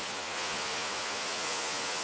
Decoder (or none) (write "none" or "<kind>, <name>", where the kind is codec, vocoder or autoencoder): vocoder, Vocos